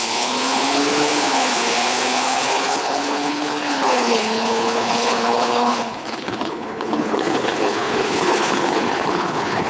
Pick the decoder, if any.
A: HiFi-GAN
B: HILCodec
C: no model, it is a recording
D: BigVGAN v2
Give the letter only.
B